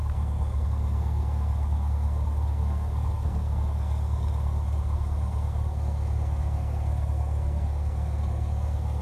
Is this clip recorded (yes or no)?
no